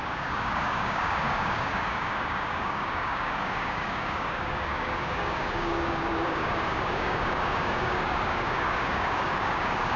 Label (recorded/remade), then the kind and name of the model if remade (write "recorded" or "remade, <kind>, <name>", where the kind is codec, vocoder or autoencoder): remade, codec, DAC